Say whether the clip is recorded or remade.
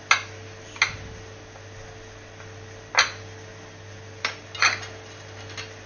recorded